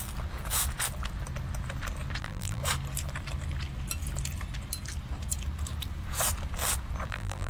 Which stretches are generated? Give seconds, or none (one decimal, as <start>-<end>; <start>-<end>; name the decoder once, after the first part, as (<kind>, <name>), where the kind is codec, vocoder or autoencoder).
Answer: 2.2-2.6 (vocoder, BigVGAN v2); 7.1-7.5